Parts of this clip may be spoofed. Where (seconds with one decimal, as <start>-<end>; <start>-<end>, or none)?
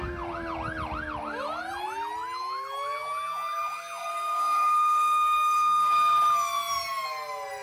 4.0-5.9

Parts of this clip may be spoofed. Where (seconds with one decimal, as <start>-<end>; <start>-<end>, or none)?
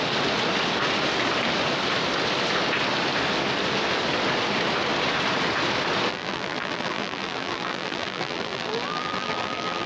6.1-9.9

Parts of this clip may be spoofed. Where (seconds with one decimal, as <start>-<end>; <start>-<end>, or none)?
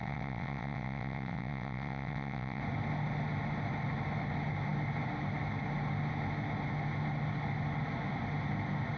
0.0-2.6